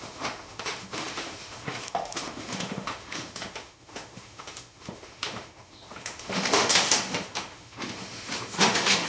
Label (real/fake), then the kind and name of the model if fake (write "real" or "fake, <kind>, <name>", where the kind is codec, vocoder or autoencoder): fake, autoencoder, DAC-VAE